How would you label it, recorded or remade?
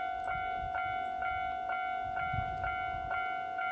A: recorded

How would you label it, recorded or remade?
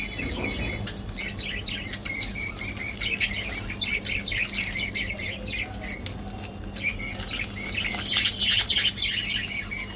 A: recorded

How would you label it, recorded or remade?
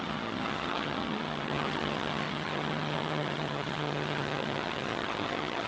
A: remade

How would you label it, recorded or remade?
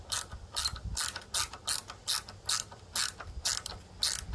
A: recorded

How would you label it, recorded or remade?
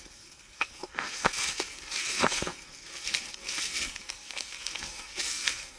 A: remade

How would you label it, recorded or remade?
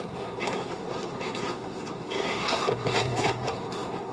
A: remade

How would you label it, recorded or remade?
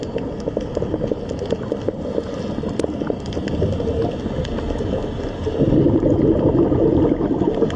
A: recorded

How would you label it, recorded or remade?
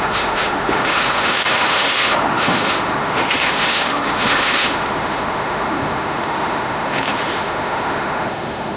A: remade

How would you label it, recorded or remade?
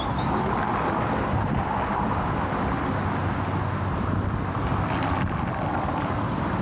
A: recorded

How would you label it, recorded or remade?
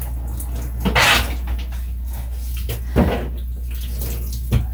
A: recorded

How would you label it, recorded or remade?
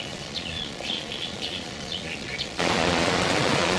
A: remade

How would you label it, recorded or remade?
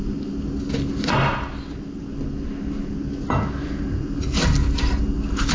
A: recorded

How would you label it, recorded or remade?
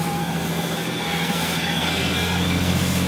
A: remade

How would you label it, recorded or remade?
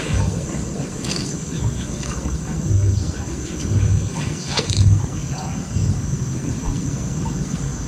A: remade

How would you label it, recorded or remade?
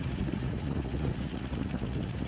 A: remade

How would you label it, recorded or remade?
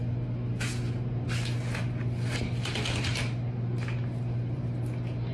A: recorded